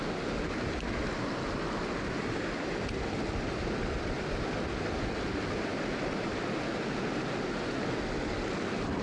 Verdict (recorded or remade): recorded